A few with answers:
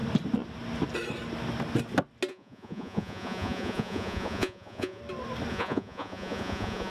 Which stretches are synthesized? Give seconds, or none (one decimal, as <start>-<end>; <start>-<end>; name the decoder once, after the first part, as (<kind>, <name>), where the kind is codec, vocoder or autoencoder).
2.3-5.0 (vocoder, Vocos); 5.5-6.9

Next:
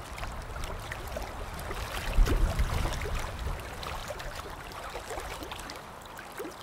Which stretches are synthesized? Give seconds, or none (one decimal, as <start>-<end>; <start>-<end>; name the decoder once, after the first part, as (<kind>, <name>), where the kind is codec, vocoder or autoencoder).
4.0-5.2 (vocoder, BigVGAN v2)

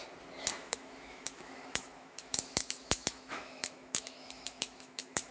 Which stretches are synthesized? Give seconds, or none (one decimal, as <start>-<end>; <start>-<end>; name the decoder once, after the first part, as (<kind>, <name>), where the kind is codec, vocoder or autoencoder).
0.5-5.3 (autoencoder, DAC-VAE)